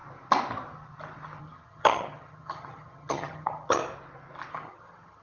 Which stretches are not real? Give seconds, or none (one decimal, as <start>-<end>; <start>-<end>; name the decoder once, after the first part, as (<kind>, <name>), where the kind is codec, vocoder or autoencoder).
1.4-3.8 (vocoder, HiFi-GAN); 4.5-5.2